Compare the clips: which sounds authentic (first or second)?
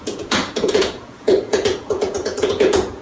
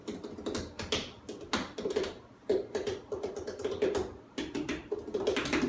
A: second